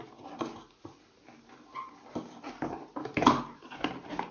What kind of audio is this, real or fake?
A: real